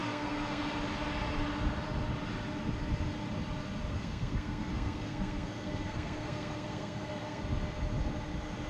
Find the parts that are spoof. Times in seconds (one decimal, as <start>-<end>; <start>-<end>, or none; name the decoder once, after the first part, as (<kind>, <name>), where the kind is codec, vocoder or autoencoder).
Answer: 0.0-0.6 (codec, SNAC); 3.9-7.4